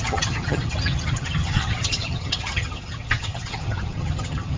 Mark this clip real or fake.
fake